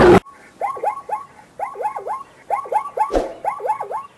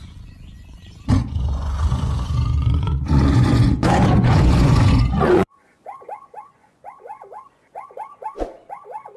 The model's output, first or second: second